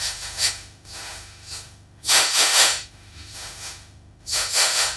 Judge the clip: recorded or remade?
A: remade